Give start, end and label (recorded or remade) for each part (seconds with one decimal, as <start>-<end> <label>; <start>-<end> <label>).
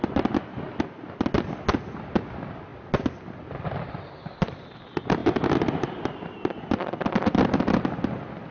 0.0-8.5 recorded